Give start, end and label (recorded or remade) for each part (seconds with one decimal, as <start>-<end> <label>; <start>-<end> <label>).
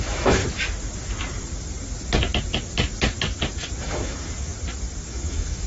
0.0-0.4 remade; 0.4-3.8 recorded; 3.8-4.5 remade; 4.5-5.1 recorded; 5.1-5.7 remade